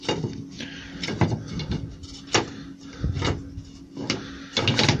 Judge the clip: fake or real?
real